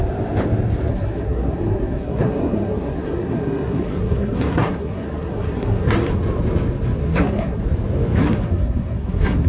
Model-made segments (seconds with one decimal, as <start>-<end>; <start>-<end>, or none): 0.9-6.1; 7.0-7.6; 8.2-9.5